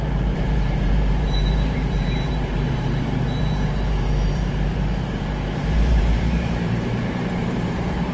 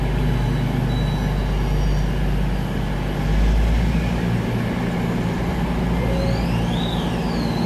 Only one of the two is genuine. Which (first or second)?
second